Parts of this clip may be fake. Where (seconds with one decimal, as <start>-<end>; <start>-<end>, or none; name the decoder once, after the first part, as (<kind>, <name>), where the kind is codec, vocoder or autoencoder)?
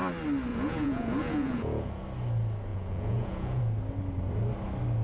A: 0.5-2.0 (vocoder, Vocos); 2.7-3.6